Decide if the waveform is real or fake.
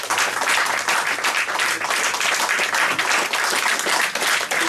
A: real